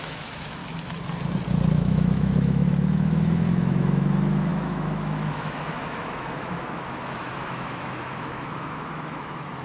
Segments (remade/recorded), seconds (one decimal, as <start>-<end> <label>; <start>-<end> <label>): 0.0-0.6 remade; 0.6-1.7 recorded; 1.7-9.6 remade